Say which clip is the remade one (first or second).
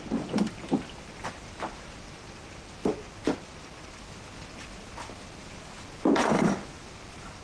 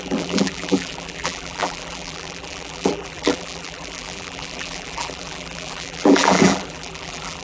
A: second